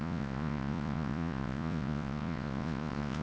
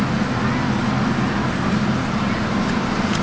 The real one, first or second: second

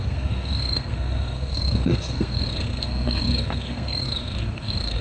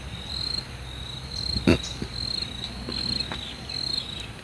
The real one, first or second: second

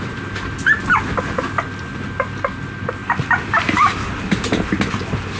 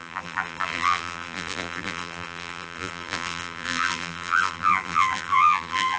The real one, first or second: first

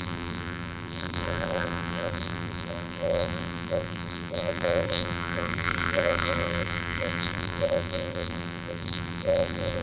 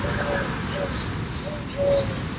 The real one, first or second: second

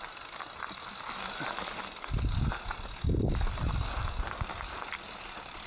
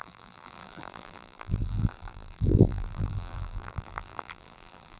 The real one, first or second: first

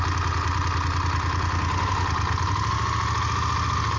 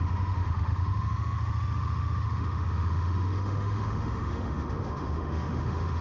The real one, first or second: first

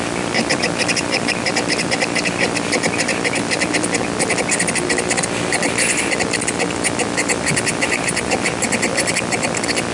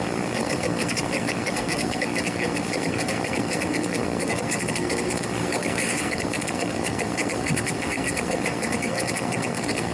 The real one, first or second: first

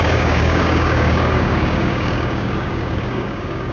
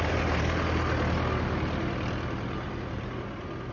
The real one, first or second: second